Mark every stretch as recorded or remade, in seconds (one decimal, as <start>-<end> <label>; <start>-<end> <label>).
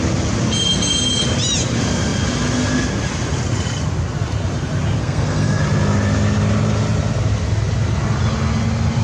0.0-5.0 recorded; 5.0-5.6 remade; 5.6-9.0 recorded